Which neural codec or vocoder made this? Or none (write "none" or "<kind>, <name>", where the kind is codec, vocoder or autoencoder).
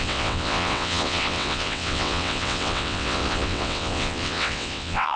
vocoder, WaveNeXt